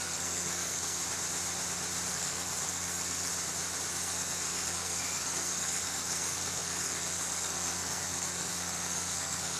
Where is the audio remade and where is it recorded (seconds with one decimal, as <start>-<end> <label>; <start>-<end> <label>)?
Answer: 0.0-1.0 remade; 1.0-2.1 recorded; 2.1-3.3 remade; 3.3-3.9 recorded; 3.9-9.6 remade